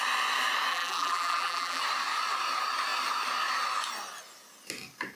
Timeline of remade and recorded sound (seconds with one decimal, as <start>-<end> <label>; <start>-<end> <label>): 0.0-0.7 recorded; 0.7-1.8 remade; 1.8-5.1 recorded

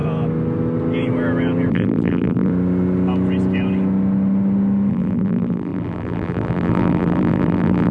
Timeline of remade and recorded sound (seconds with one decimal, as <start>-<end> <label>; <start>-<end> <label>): 0.0-1.7 recorded; 1.7-2.5 remade; 2.5-4.9 recorded; 4.9-7.9 remade